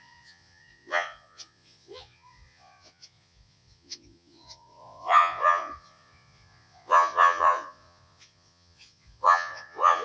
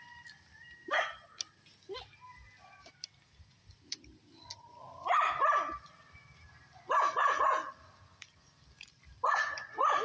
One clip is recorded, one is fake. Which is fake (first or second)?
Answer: first